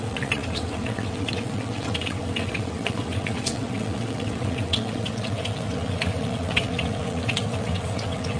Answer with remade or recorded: remade